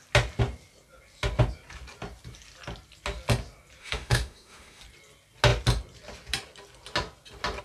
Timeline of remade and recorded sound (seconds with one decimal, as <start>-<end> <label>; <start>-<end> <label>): 0.0-3.8 recorded; 3.8-4.8 remade; 4.8-7.6 recorded